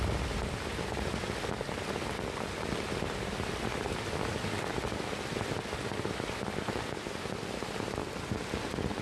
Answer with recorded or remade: recorded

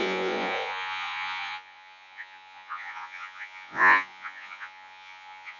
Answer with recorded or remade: remade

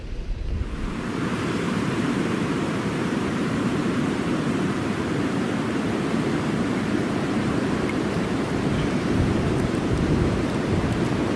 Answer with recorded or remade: remade